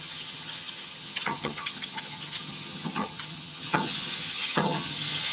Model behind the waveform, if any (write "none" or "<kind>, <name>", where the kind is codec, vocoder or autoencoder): vocoder, HiFi-GAN